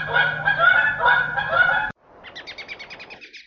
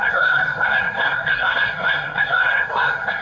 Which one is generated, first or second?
second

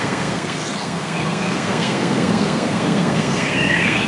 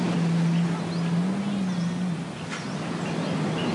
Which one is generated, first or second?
first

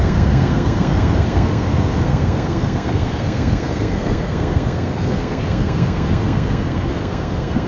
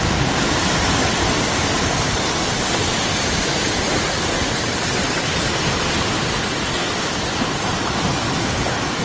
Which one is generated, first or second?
first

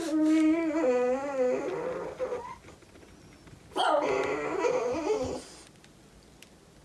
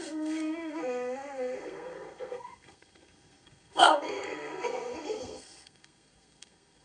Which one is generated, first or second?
second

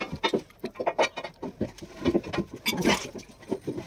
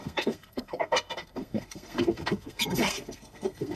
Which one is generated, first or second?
second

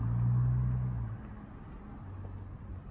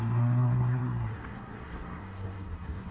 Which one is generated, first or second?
second